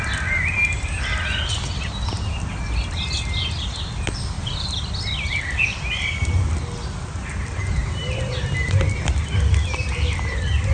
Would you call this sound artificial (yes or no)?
no